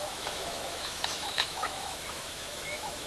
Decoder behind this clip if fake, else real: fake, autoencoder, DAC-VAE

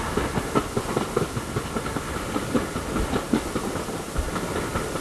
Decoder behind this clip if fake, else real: real